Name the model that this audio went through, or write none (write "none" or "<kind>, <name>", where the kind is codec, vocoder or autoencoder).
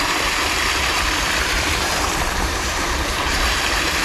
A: vocoder, BigVGAN v2